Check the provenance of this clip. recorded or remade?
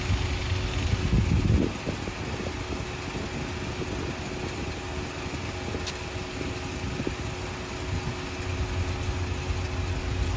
recorded